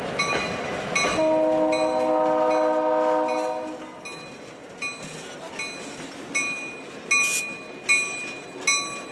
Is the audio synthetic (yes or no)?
no